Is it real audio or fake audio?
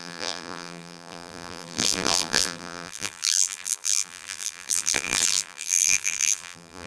fake